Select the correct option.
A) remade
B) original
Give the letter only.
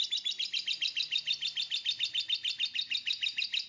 B